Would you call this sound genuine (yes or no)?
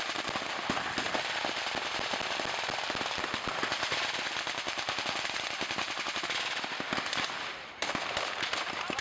yes